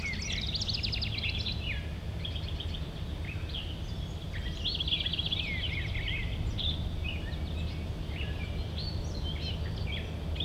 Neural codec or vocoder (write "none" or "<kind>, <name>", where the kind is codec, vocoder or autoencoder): none